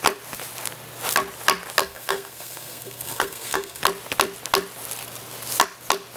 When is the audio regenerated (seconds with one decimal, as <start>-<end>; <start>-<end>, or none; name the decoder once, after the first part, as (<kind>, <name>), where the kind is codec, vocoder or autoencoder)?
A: 1.8-3.8 (codec, SNAC)